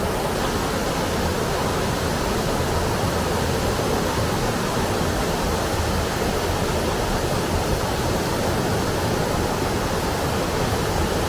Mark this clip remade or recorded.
recorded